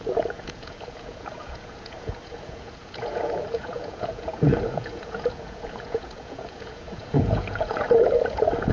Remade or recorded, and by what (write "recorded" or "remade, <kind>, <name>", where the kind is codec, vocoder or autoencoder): remade, vocoder, Vocos